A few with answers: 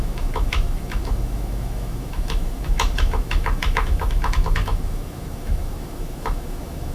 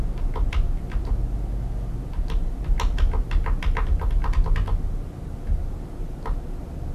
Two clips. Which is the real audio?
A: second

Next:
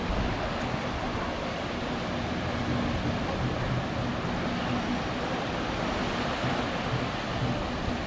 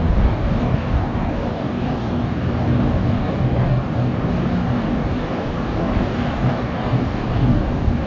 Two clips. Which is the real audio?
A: first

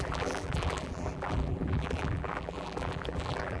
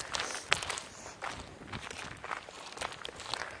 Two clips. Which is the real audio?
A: second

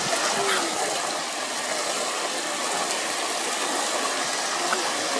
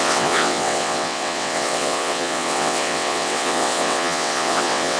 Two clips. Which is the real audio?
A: first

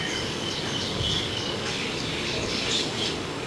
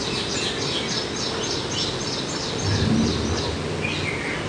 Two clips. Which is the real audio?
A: second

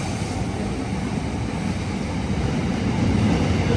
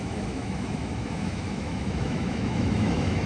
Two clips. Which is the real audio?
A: first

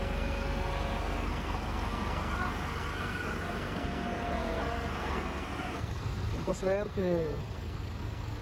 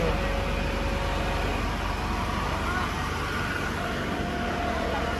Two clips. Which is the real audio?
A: second